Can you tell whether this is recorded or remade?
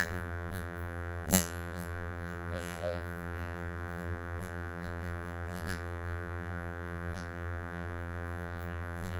remade